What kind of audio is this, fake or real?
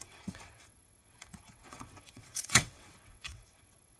fake